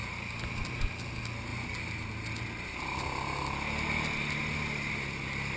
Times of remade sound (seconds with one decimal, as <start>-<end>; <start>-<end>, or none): none